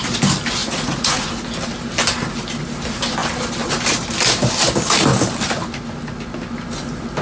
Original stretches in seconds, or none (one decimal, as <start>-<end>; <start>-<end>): 0.0-0.6; 1.3-7.2